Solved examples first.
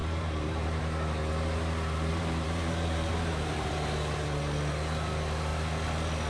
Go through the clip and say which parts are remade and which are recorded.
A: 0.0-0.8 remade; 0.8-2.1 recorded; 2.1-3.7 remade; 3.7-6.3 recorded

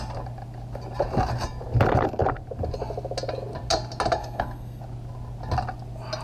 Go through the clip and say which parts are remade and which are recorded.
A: 0.0-4.2 recorded; 4.2-4.8 remade; 4.8-6.2 recorded

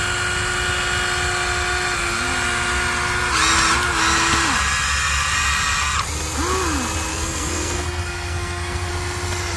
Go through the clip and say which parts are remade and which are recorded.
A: 0.0-7.1 recorded; 7.1-8.9 remade; 8.9-9.6 recorded

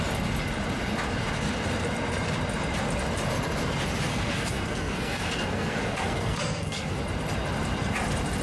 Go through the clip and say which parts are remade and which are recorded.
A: 0.0-4.1 recorded; 4.1-7.0 remade; 7.0-8.4 recorded

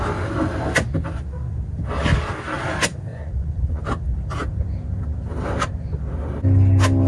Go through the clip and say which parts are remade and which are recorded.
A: 0.0-3.1 recorded; 3.1-3.8 remade; 3.8-7.1 recorded

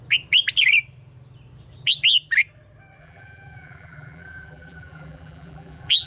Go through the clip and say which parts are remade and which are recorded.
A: 0.0-3.0 recorded; 3.0-6.1 remade